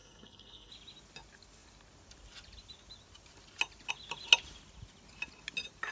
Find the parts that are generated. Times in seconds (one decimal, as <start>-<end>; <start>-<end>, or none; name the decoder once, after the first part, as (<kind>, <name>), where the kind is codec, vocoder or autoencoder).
0.0-0.7 (codec, SNAC)